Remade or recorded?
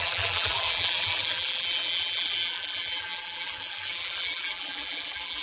remade